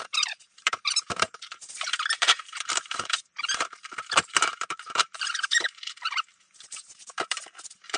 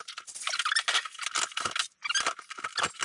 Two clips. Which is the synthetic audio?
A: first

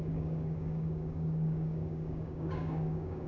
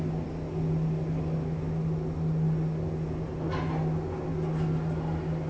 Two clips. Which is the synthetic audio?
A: first